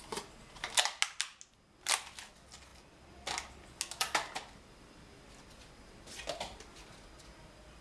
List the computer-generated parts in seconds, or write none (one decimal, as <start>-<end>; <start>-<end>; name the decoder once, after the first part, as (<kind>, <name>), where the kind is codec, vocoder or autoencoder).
none